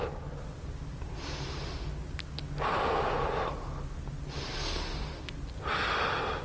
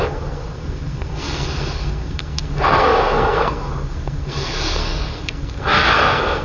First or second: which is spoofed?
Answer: second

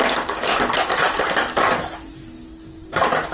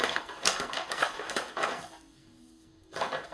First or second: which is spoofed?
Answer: second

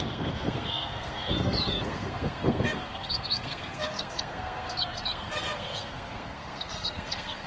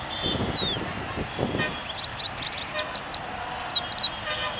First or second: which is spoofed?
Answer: first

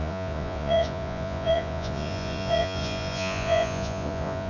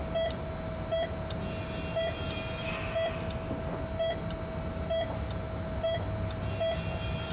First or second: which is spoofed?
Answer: first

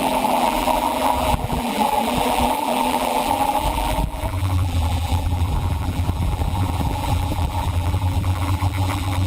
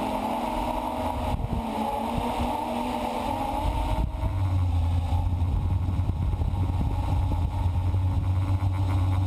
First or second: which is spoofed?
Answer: first